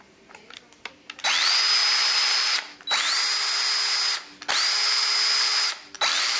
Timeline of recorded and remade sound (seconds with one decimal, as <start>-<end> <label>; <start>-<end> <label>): 0.0-6.4 recorded